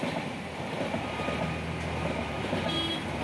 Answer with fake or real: real